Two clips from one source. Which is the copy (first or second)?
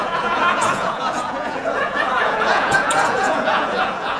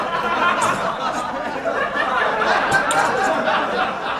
first